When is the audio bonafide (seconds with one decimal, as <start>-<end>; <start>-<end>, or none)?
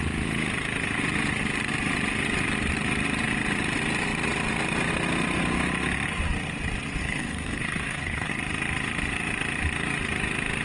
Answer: 0.0-7.0; 8.3-10.6